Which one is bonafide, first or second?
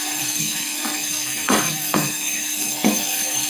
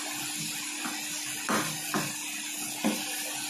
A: second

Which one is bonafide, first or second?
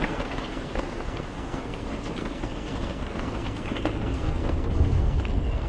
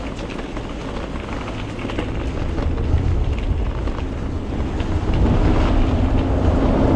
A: second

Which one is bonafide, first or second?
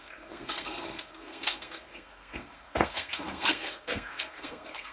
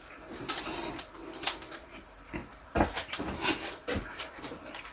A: second